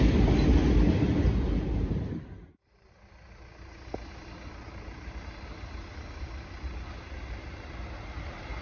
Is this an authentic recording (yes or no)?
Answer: yes